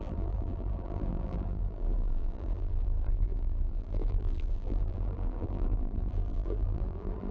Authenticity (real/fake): fake